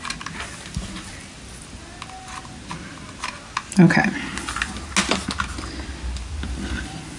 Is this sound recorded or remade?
recorded